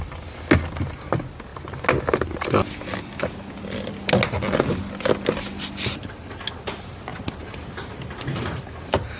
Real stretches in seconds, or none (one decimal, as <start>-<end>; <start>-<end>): 0.0-9.2